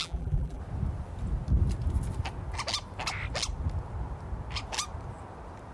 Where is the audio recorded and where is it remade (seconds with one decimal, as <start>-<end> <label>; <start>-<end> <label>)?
0.0-0.6 remade; 0.6-5.7 recorded